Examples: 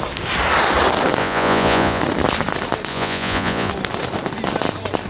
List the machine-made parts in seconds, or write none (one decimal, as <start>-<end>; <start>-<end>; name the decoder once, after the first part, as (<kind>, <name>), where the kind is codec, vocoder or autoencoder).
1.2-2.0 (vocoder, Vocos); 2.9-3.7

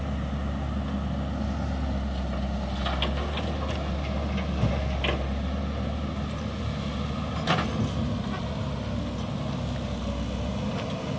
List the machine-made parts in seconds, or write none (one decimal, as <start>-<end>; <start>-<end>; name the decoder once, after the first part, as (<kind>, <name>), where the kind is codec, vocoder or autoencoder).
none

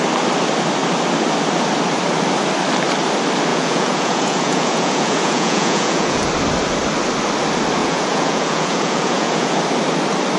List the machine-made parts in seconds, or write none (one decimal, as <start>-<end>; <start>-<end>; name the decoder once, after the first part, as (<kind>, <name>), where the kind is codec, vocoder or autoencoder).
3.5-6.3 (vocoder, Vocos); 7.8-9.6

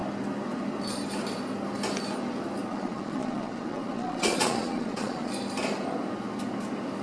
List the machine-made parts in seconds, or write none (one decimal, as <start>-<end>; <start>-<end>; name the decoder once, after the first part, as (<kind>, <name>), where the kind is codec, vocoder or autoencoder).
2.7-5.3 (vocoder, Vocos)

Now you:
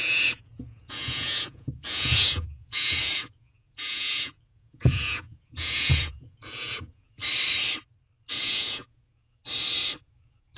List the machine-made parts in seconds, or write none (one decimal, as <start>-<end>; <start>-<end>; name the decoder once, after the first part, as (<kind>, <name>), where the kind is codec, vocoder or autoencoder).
0.0-7.2 (vocoder, Vocos); 8.3-9.4; 10.0-10.6

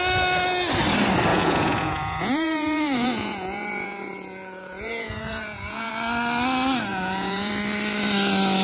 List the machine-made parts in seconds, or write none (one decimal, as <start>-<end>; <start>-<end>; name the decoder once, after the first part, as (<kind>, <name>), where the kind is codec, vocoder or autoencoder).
1.3-5.9 (vocoder, Vocos); 6.9-7.5

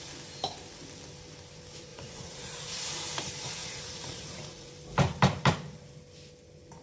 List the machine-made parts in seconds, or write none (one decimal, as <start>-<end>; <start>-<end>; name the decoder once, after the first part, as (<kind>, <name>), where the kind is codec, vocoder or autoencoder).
1.9-2.8 (vocoder, Vocos); 3.6-4.7

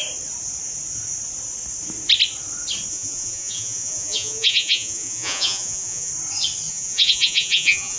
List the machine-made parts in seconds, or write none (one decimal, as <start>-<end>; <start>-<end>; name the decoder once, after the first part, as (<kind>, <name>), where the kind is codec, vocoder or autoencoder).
2.9-6.1 (vocoder, Vocos); 6.7-8.0